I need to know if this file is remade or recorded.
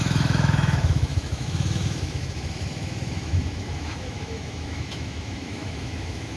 remade